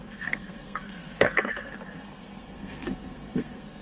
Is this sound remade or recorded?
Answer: remade